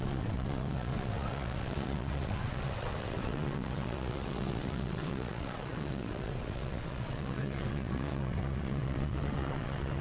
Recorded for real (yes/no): no